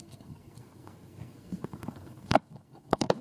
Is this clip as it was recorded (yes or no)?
no